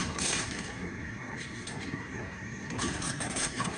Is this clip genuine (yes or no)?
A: no